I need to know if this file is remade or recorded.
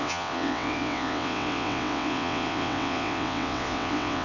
remade